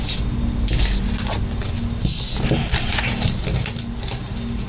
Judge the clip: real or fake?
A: real